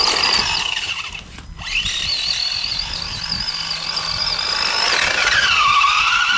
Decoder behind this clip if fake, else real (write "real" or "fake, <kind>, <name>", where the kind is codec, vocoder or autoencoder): real